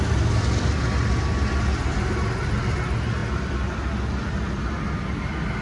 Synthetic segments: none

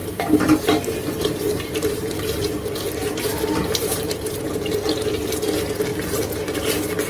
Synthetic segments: 0.0-4.3 (vocoder, BigVGAN v2)

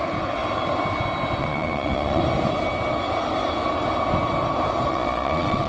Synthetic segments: 1.4-2.2 (vocoder, Vocos); 4.9-5.7

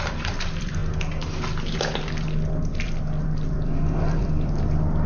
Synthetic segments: 0.0-0.8 (vocoder, BigVGAN v2); 1.7-5.1

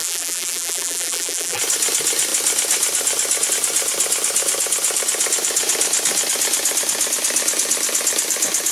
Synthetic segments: 0.0-1.6 (vocoder, BigVGAN v2)

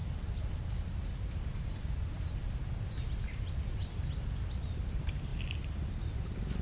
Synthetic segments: none

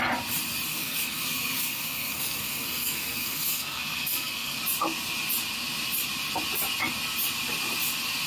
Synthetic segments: 0.7-4.6 (codec, SNAC)